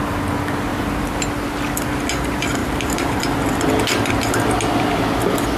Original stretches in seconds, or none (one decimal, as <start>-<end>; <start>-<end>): 0.0-0.7; 1.6-2.6; 3.2-5.6